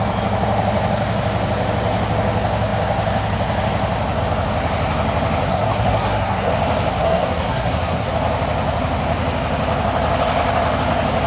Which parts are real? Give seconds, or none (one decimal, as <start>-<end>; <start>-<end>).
0.0-5.5; 6.5-6.9; 8.1-11.3